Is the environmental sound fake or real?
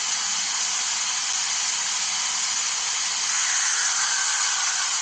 real